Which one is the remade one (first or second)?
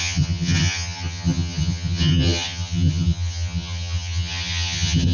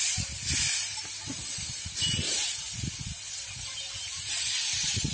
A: first